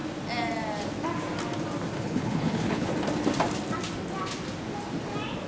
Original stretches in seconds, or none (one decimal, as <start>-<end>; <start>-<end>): 0.0-1.9; 2.9-5.5